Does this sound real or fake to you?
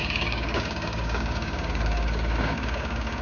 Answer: fake